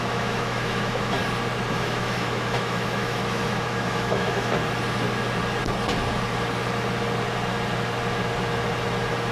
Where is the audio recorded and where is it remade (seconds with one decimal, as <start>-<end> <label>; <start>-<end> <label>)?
0.0-1.2 remade; 1.2-1.7 recorded; 1.7-4.6 remade; 4.6-9.3 recorded